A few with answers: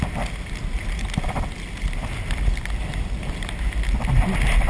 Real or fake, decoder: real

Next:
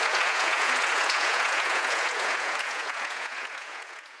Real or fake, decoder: fake, vocoder, Vocos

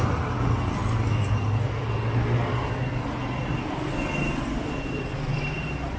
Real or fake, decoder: real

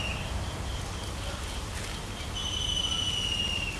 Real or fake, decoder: real